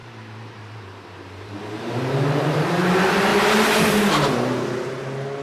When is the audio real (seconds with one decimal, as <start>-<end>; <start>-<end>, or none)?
2.7-3.3; 4.1-5.4